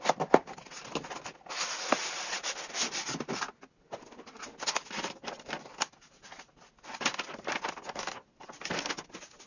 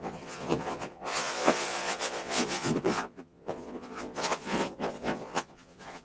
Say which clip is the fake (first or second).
second